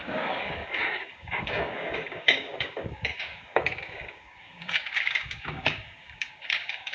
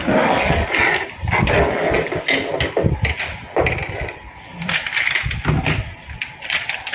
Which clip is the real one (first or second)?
second